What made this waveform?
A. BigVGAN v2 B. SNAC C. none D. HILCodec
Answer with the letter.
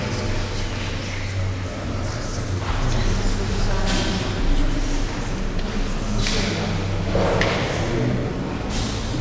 C